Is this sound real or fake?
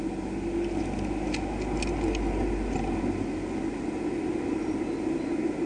real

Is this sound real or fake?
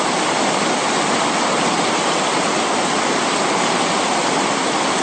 real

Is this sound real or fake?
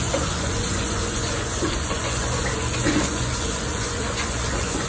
fake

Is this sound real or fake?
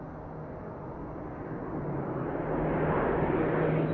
real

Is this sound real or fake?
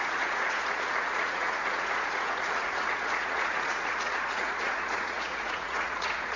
fake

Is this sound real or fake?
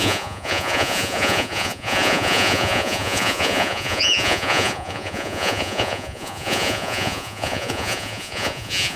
fake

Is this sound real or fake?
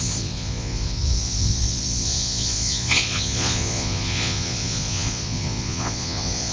fake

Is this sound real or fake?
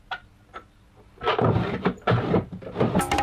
real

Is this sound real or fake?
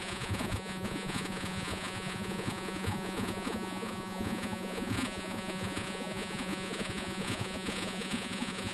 fake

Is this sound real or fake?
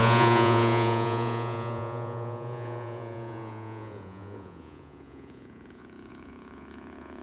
fake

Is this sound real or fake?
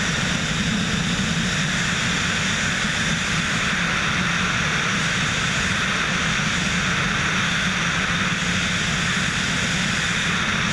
real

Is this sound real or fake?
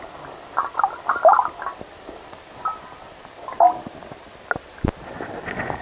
real